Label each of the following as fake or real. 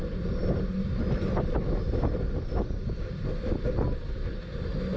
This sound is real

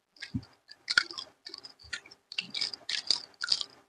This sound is real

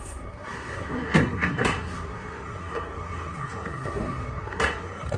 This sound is fake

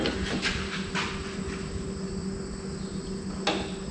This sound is real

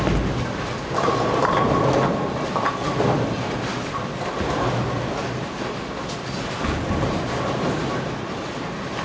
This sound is real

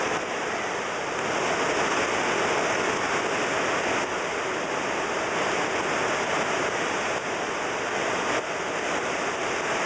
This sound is real